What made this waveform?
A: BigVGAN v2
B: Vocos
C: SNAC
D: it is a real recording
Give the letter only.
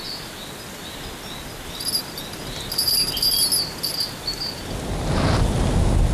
D